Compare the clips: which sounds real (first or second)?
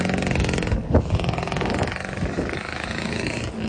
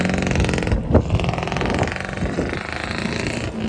second